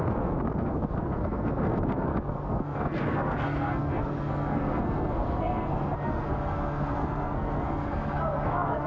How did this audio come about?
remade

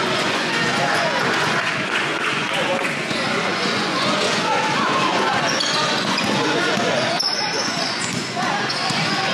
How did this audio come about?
remade